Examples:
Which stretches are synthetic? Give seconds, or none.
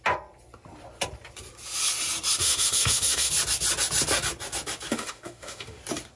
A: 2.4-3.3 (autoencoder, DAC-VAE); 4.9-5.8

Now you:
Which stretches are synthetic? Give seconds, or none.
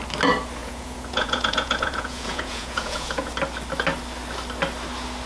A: 0.6-3.3 (vocoder, Vocos)